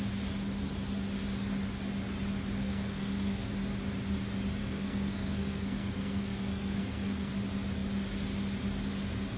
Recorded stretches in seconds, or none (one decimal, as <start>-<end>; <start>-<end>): 0.0-2.6; 3.5-4.6; 7.3-9.4